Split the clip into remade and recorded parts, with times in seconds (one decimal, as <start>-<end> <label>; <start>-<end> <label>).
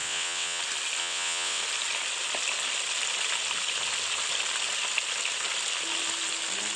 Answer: 0.0-0.6 remade; 0.6-1.0 recorded; 1.0-1.6 remade; 1.6-6.8 recorded